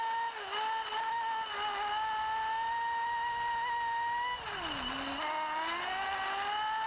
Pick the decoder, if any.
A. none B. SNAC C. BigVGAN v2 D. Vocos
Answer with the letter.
A